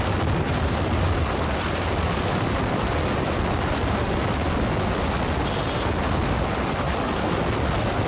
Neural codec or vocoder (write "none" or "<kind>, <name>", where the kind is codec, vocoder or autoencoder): none